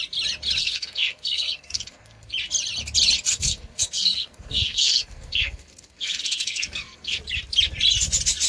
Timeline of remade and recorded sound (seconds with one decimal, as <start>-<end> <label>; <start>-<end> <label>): 0.0-0.6 recorded; 0.6-2.3 remade; 2.3-3.3 recorded; 3.3-7.2 remade; 7.2-8.5 recorded